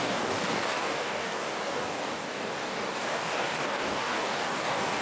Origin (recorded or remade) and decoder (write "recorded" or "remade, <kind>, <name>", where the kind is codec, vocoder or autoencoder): remade, codec, DAC